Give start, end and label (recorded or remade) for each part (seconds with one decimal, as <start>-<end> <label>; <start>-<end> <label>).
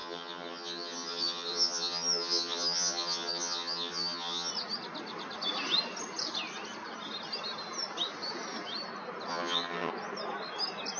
0.0-4.5 remade; 4.5-9.3 recorded; 9.3-9.9 remade; 9.9-11.0 recorded